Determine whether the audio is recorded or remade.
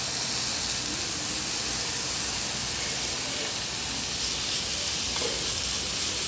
recorded